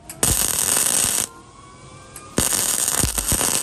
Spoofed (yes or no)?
no